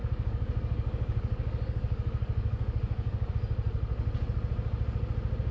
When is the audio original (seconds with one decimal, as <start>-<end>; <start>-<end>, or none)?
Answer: 3.3-5.5